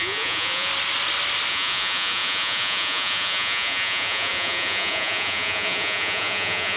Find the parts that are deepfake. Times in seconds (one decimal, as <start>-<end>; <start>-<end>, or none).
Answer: 0.0-0.7; 1.5-6.8